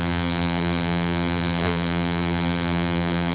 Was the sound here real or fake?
fake